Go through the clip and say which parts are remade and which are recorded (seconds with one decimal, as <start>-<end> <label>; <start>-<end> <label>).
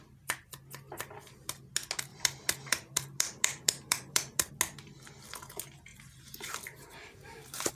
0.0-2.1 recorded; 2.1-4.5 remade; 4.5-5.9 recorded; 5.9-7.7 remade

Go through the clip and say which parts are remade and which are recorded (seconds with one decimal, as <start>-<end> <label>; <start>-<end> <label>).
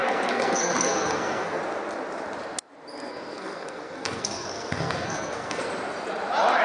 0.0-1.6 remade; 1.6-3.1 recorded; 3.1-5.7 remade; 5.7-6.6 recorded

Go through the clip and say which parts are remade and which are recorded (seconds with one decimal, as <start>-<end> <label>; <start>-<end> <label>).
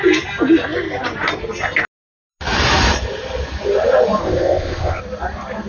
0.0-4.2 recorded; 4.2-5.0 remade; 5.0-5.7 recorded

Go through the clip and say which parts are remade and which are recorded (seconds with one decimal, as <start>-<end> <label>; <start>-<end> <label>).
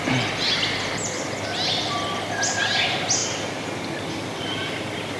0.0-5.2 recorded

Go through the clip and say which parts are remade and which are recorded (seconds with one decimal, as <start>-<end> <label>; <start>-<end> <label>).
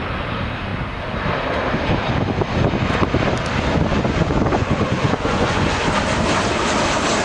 0.0-3.9 recorded; 3.9-5.8 remade; 5.8-7.2 recorded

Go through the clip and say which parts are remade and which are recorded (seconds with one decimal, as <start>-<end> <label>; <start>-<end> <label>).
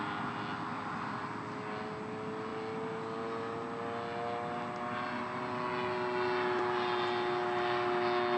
0.0-8.4 recorded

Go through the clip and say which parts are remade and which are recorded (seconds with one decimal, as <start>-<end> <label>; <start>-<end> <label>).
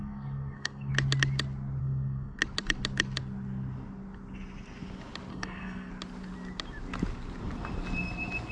0.0-0.9 remade; 0.9-1.8 recorded; 1.8-2.4 remade; 2.4-5.3 recorded; 5.3-5.9 remade; 5.9-8.5 recorded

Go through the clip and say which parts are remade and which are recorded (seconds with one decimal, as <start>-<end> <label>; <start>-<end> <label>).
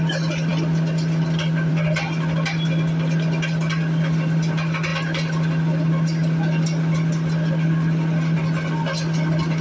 0.0-9.6 recorded